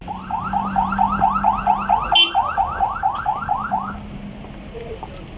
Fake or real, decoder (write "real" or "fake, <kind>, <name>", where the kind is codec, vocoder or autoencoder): real